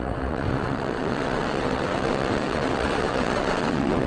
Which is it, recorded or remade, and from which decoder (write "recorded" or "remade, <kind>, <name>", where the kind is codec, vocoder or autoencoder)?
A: remade, vocoder, WaveNeXt